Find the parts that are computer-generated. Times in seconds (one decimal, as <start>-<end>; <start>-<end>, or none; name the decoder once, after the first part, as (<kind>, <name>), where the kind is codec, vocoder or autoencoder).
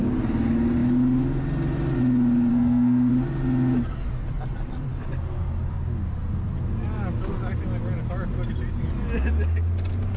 2.5-3.1 (codec, SNAC)